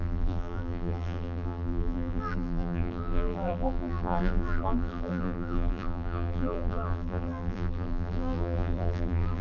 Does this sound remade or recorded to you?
remade